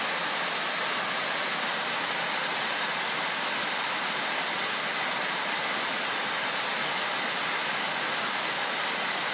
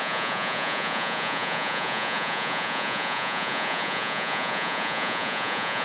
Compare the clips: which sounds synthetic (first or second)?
second